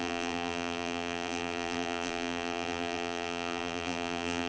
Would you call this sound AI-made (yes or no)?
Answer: yes